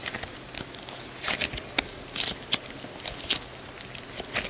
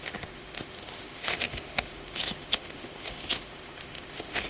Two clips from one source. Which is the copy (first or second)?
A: second